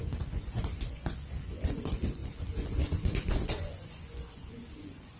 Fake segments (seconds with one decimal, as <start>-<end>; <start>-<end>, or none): 0.0-5.2